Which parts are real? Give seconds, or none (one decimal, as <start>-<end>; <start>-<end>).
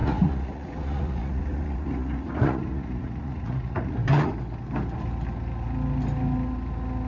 4.3-7.1